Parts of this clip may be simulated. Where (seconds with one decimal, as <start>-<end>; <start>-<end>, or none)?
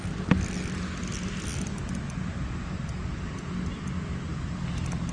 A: none